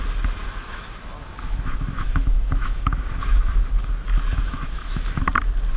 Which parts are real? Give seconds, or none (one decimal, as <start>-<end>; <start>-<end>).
0.0-0.4; 3.9-4.3; 5.2-5.8